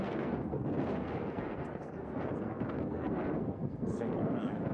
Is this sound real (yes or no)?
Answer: no